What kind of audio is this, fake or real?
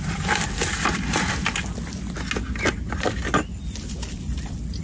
real